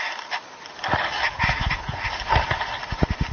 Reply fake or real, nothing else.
real